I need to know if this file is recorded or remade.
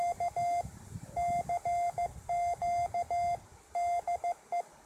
recorded